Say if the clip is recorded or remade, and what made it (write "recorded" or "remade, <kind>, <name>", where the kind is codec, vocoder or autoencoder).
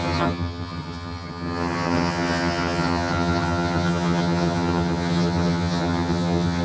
remade, vocoder, HiFi-GAN